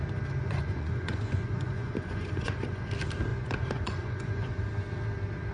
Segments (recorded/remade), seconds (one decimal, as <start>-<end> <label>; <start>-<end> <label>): 0.0-0.4 recorded; 0.4-2.9 remade; 2.9-3.3 recorded; 3.3-4.6 remade; 4.6-5.5 recorded